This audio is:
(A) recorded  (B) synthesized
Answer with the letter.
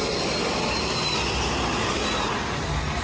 A